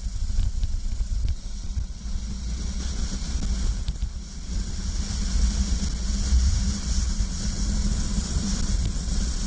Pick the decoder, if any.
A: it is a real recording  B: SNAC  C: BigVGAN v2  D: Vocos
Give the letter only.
A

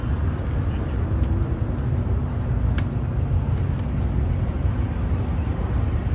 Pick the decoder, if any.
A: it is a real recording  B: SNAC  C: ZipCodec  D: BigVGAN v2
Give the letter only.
A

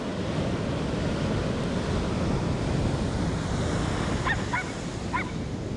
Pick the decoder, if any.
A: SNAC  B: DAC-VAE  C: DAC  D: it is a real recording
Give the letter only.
D